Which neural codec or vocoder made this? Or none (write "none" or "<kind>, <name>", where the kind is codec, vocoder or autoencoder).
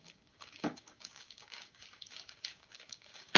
codec, DAC